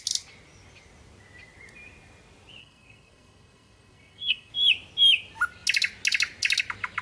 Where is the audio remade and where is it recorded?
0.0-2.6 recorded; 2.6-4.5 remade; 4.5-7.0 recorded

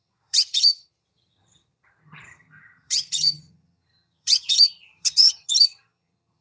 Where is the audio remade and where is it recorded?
0.0-6.4 remade